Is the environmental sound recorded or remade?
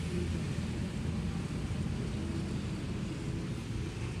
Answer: recorded